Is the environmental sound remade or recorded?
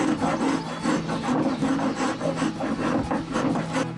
recorded